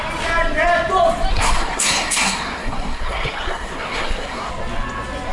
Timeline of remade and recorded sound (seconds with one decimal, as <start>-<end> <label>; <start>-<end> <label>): 0.0-1.3 recorded; 1.3-4.5 remade; 4.5-5.3 recorded